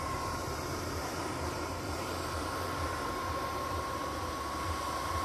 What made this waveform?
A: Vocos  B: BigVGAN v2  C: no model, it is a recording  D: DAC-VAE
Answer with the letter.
B